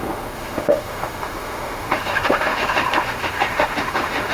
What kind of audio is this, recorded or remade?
remade